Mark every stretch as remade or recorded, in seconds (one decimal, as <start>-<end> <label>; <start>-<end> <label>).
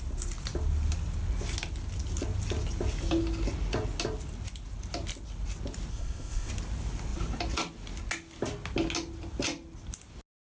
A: 0.0-5.9 recorded; 5.9-6.5 remade; 6.5-10.5 recorded